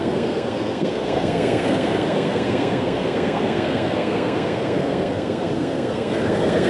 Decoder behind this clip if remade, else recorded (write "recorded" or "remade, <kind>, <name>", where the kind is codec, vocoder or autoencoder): remade, codec, SNAC